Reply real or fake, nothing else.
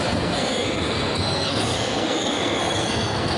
fake